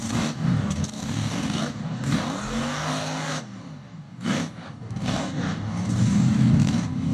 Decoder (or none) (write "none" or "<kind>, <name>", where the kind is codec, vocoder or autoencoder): codec, DAC